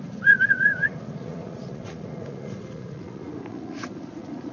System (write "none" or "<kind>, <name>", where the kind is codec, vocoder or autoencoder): vocoder, Vocos